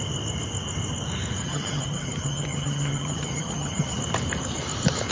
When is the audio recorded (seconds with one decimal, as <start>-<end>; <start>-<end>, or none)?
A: 0.0-1.4; 4.0-5.1